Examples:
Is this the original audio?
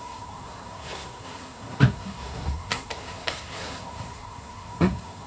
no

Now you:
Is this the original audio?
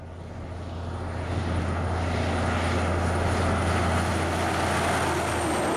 yes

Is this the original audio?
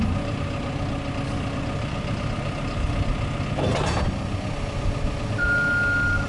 yes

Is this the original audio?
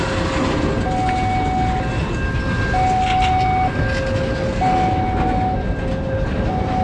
yes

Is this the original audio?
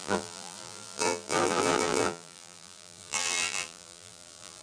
no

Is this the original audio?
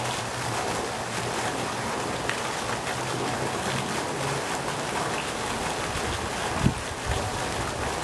yes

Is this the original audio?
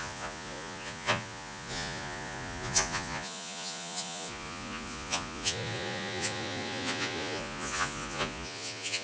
no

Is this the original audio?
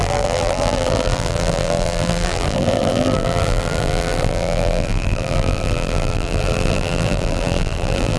no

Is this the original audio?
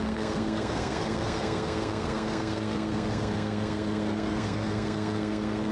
no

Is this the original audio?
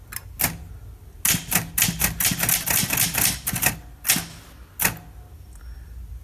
yes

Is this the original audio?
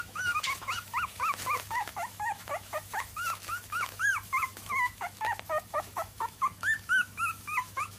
no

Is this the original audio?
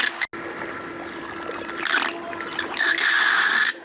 yes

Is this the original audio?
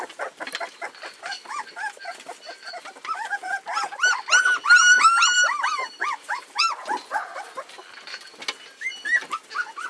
yes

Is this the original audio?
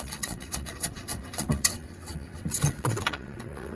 no